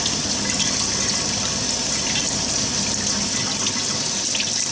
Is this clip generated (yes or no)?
no